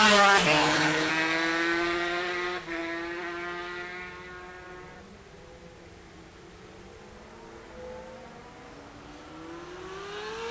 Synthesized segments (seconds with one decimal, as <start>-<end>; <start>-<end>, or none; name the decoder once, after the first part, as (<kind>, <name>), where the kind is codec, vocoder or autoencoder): 0.6-1.1 (codec, HILCodec)

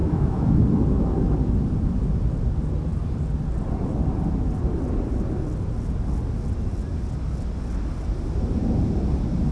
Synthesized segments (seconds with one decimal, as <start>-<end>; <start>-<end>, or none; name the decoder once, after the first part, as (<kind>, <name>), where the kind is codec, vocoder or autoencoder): 0.0-0.5 (autoencoder, DAC-VAE)

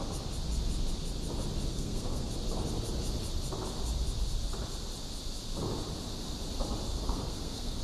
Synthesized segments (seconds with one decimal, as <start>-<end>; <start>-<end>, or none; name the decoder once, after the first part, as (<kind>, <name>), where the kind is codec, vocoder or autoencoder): 1.7-2.3 (codec, SNAC); 6.9-7.8

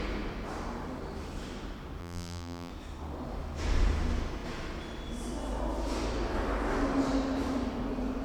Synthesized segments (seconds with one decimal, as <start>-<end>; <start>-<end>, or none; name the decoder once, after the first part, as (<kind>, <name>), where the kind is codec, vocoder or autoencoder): 2.0-2.7 (vocoder, BigVGAN v2)

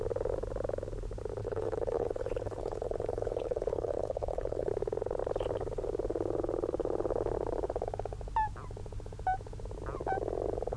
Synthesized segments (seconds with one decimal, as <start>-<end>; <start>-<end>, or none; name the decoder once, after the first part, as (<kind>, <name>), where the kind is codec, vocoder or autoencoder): 1.4-4.7 (codec, HILCodec)